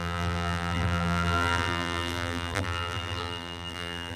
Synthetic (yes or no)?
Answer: yes